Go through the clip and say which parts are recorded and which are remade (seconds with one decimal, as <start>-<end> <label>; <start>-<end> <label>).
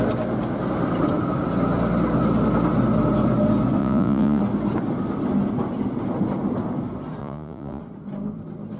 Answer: 0.0-3.8 recorded; 3.8-4.4 remade; 4.4-7.2 recorded; 7.2-7.8 remade; 7.8-8.8 recorded